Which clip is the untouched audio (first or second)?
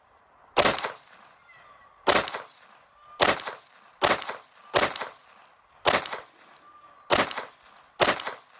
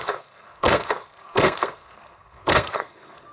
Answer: first